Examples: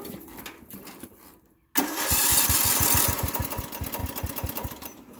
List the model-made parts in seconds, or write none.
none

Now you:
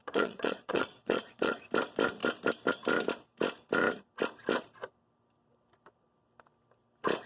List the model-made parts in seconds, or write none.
0.0-1.6 (vocoder, Vocos)